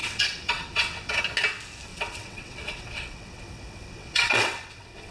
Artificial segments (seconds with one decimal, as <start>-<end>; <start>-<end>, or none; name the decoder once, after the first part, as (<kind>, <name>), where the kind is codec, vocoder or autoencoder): 0.0-1.2 (vocoder, WaveNeXt); 1.9-5.1